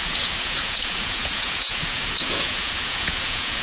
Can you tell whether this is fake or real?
fake